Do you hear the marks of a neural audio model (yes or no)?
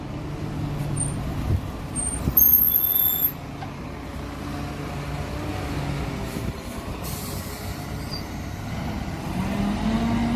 no